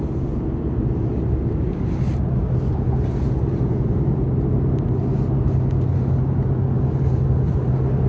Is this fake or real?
real